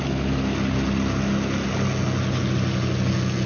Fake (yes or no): no